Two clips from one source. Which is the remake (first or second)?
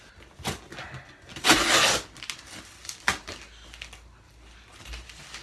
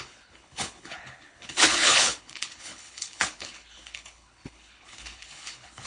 second